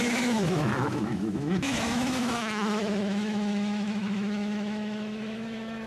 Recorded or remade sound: remade